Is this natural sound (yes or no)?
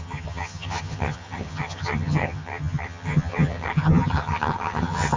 no